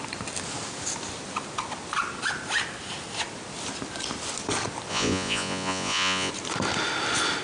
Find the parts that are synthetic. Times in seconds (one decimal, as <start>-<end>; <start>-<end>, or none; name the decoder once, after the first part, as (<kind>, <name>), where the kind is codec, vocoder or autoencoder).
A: 4.9-6.3 (vocoder, Vocos)